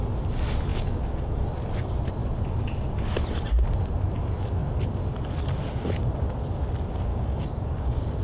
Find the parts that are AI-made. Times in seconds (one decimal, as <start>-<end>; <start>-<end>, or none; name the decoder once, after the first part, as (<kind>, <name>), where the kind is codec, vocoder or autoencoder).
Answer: 0.7-1.5 (codec, DAC); 7.1-8.2